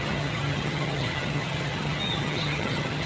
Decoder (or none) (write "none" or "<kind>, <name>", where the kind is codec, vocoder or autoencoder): vocoder, HiFi-GAN